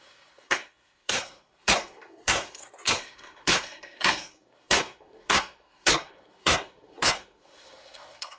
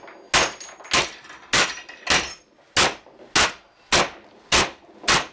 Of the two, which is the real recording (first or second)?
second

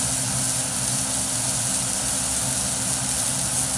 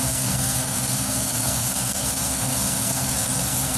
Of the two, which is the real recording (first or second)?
first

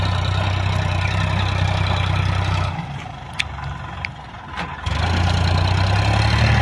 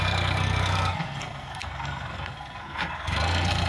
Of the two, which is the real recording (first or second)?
first